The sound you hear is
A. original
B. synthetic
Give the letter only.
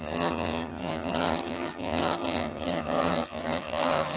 B